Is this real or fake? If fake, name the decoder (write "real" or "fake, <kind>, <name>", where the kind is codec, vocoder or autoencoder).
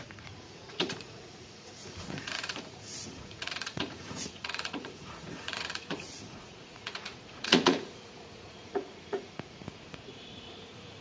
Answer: fake, vocoder, Vocos